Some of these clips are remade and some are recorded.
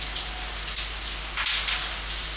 recorded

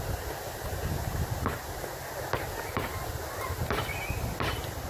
recorded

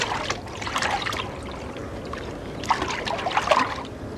recorded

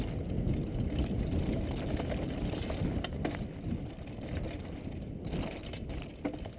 recorded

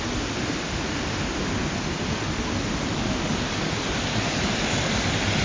recorded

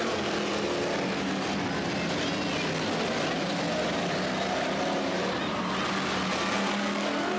recorded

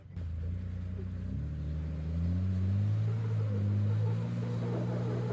recorded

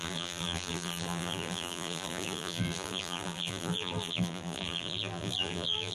remade